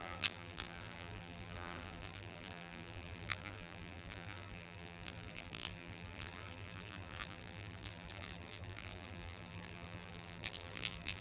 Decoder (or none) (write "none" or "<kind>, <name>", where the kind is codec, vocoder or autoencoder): vocoder, BigVGAN v2